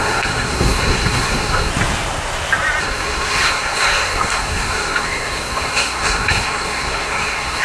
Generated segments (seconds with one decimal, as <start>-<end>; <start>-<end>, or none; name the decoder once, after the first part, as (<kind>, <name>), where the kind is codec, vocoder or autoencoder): 0.0-1.7 (codec, SNAC); 2.8-7.6